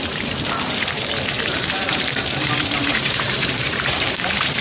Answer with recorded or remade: remade